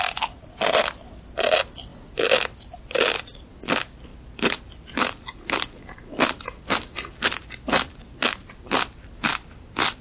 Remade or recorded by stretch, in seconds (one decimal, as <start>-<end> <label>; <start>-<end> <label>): 0.0-10.0 recorded